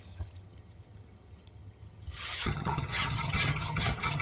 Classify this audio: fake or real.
fake